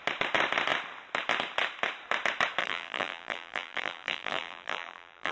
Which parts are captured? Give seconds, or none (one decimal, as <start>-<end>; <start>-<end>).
0.0-2.6